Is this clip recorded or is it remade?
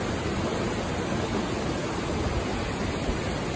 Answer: recorded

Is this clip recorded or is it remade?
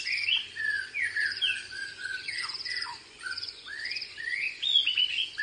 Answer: remade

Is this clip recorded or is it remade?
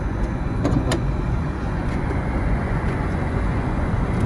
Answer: remade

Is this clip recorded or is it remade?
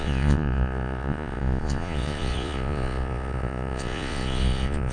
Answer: remade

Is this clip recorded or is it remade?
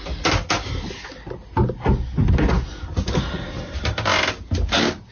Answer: recorded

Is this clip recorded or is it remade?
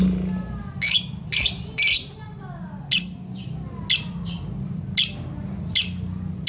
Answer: recorded